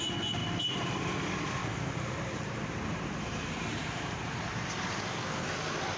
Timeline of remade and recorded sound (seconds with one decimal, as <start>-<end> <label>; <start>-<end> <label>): 0.0-0.4 recorded; 0.4-1.0 remade; 1.0-1.6 recorded; 1.6-4.5 remade; 4.5-6.0 recorded